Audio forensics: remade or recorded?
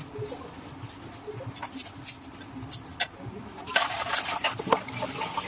recorded